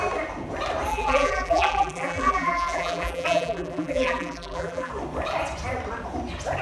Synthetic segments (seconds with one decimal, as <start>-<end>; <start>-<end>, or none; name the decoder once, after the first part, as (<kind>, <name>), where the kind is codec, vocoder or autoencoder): 0.9-4.9 (vocoder, BigVGAN v2)

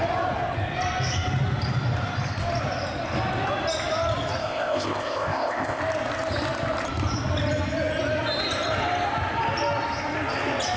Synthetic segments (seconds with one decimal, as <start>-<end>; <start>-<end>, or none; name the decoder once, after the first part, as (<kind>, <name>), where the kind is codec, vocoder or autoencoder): 4.4-5.8 (codec, ZipCodec)